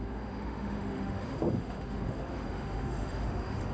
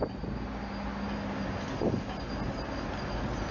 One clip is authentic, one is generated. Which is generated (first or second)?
first